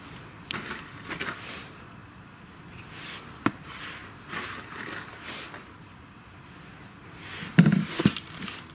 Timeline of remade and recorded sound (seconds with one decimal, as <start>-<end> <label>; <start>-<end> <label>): 0.0-2.0 recorded; 2.0-2.6 remade; 2.6-7.7 recorded; 7.7-8.7 remade

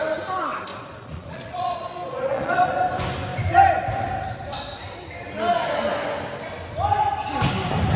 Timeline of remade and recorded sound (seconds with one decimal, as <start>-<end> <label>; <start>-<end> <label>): 0.0-0.7 recorded; 0.7-1.7 remade; 1.7-2.1 recorded; 2.1-2.7 remade; 2.7-8.0 recorded

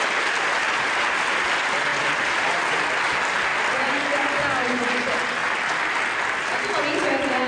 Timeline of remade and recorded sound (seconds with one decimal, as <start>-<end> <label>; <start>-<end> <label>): 0.0-1.9 recorded; 1.9-3.1 remade; 3.1-7.5 recorded